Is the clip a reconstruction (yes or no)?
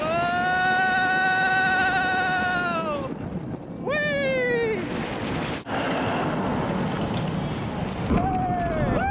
no